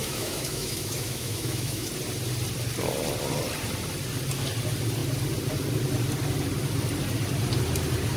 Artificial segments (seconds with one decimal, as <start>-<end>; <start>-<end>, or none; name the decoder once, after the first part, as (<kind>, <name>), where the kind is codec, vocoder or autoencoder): 0.0-1.9 (autoencoder, DAC-VAE)